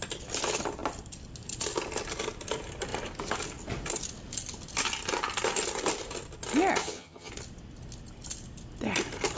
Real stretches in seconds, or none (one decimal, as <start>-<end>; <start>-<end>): 0.0-6.8; 7.3-9.4